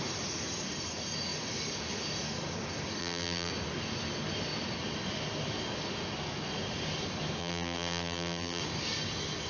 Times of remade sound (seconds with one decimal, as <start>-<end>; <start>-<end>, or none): 3.0-3.5; 7.4-8.6

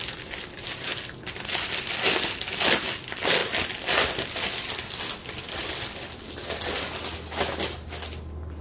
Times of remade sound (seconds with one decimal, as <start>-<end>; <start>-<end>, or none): 0.9-3.0

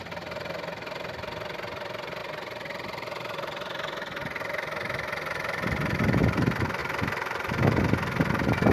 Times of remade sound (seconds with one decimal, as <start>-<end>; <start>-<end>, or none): 6.8-7.8

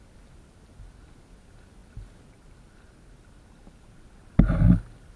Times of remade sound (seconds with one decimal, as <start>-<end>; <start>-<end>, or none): none

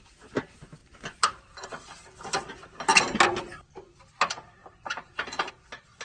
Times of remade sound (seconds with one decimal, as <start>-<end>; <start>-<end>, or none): 4.6-5.5

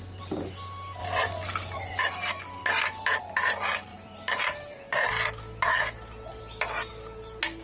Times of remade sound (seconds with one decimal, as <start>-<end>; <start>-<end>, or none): 1.0-2.0; 3.9-5.1

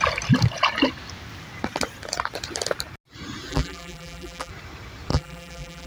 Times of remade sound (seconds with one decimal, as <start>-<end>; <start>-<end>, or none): 3.5-4.5; 5.1-5.9